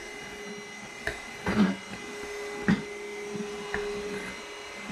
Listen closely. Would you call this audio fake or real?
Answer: real